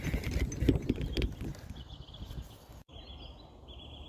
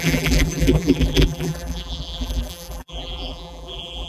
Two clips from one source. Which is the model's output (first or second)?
second